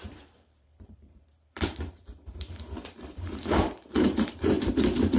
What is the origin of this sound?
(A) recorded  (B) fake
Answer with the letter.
B